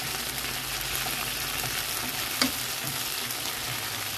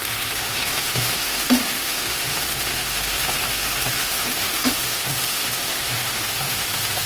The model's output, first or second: second